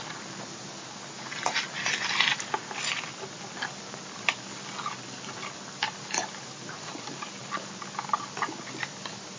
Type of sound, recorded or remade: recorded